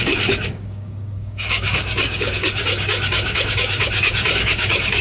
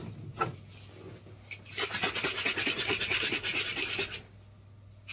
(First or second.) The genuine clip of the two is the second